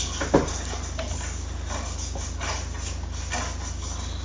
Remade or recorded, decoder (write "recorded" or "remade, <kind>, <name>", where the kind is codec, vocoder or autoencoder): recorded